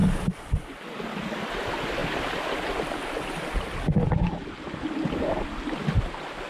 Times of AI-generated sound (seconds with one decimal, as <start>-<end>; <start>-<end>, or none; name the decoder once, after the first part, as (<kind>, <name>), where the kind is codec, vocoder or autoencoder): none

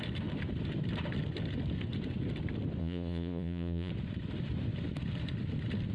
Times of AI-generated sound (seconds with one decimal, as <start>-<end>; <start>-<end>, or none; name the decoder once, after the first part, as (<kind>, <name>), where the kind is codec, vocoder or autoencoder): 2.8-3.9 (vocoder, Vocos)

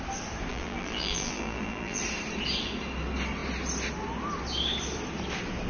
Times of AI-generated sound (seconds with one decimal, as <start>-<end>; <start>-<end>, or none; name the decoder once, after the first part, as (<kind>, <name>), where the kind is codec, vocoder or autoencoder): 0.5-2.0 (vocoder, BigVGAN v2)

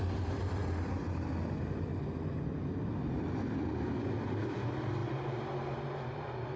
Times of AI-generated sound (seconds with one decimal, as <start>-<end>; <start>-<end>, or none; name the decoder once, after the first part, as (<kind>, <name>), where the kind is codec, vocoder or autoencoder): 0.0-0.6 (vocoder, BigVGAN v2); 3.6-5.0

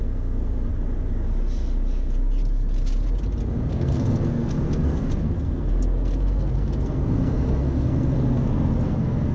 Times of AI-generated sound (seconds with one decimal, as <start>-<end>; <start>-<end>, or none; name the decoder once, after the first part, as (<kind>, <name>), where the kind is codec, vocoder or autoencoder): 0.0-0.7 (codec, SNAC); 3.7-9.3